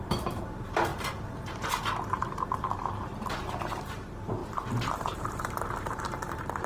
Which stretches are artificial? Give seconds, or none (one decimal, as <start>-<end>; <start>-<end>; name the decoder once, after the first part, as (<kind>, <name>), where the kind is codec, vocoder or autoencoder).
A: 0.0-6.7 (vocoder, BigVGAN v2)

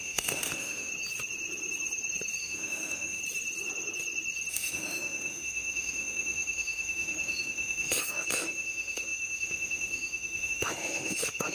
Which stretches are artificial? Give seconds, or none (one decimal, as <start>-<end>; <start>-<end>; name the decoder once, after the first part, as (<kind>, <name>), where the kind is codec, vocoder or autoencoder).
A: 0.0-0.9 (autoencoder, DAC-VAE); 2.4-3.2; 4.5-11.5

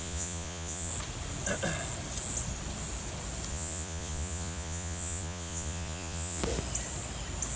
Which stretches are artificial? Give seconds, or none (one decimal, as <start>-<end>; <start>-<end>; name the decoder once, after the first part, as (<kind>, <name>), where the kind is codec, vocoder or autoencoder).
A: 0.0-0.9 (vocoder, Vocos); 3.5-6.4

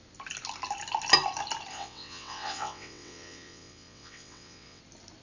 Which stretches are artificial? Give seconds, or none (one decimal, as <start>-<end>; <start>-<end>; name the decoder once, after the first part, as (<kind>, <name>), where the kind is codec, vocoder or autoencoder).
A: 1.7-4.8 (vocoder, WaveNeXt)

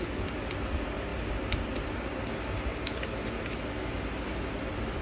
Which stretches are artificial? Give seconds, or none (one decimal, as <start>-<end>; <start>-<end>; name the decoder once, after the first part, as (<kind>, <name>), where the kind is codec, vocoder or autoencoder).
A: none